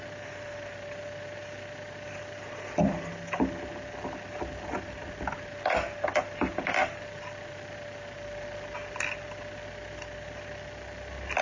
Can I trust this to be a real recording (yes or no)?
yes